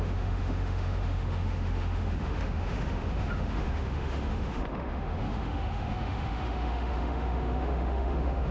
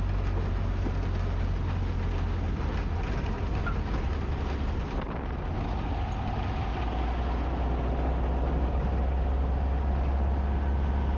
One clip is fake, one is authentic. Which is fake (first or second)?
first